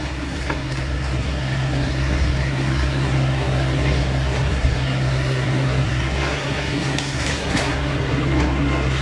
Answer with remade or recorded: remade